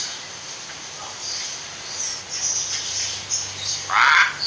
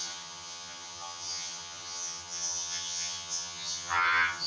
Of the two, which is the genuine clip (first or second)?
first